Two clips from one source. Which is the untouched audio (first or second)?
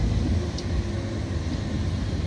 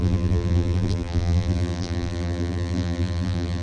first